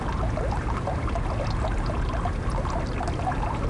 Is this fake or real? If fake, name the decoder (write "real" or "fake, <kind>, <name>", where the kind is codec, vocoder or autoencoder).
real